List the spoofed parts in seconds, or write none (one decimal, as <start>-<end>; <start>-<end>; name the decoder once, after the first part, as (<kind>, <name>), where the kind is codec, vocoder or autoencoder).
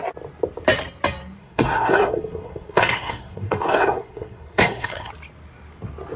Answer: 1.4-5.1 (codec, SNAC)